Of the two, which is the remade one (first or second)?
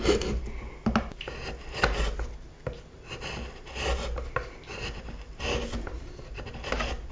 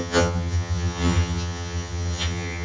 second